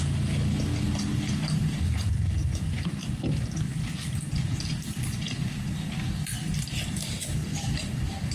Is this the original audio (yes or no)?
yes